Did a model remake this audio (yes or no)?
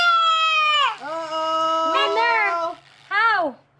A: no